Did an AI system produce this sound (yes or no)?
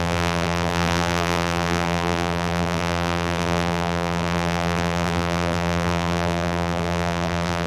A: yes